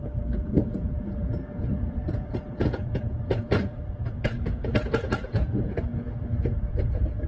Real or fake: fake